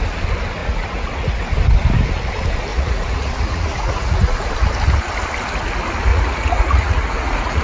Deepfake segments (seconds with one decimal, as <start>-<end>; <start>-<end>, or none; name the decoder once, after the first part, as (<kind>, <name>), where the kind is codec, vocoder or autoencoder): 0.6-1.4 (vocoder, Vocos); 2.7-4.5; 6.1-7.6